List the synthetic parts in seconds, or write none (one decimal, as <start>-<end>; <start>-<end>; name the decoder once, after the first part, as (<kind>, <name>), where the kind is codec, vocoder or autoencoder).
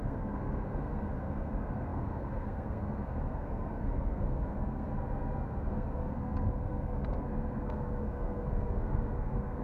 0.0-9.6 (codec, SNAC)